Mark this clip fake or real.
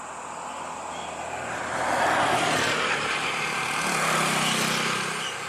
real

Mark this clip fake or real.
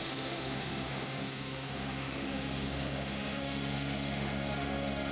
fake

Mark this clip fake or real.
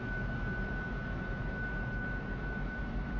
fake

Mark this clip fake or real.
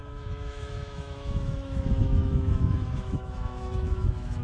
fake